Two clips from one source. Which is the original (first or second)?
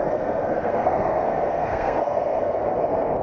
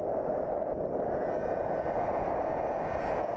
second